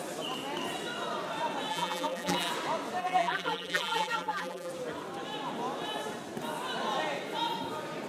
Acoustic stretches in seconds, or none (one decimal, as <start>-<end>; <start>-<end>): 0.0-1.7; 2.5-3.0; 4.7-8.1